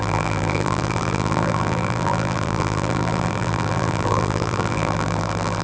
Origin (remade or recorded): remade